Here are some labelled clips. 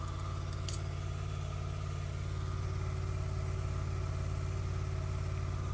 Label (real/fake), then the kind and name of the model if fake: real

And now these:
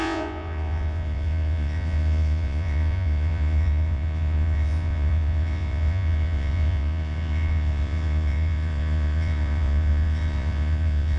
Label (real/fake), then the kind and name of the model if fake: fake, vocoder, Vocos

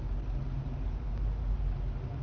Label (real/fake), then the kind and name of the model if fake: real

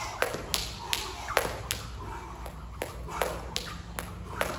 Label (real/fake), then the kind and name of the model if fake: real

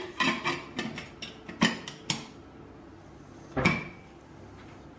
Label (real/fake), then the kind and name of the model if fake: real